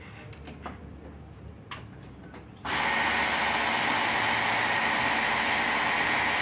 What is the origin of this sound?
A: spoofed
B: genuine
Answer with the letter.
B